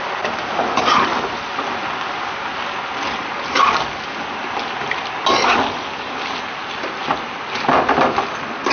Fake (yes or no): no